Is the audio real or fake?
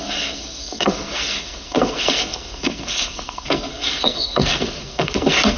fake